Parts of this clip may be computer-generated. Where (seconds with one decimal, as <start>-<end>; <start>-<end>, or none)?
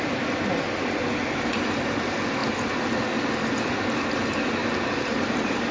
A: 4.6-5.7